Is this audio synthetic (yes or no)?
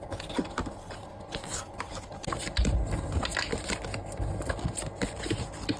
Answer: no